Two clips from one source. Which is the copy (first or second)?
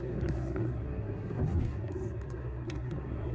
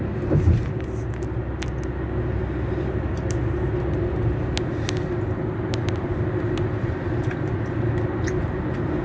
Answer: first